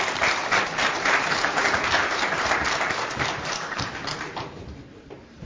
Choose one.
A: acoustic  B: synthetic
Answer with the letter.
B